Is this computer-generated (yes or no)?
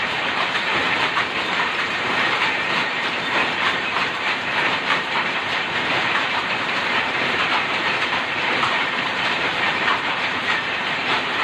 yes